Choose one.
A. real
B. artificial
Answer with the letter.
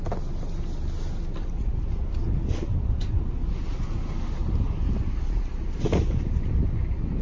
A